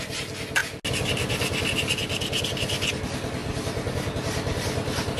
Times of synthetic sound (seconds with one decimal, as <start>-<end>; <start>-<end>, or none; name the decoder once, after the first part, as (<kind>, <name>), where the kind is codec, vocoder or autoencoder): none